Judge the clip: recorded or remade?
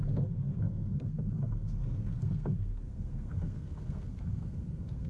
remade